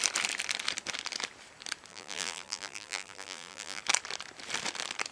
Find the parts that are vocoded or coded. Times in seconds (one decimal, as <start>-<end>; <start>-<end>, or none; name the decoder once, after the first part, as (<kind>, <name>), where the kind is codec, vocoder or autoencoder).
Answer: 1.9-3.8 (vocoder, BigVGAN v2)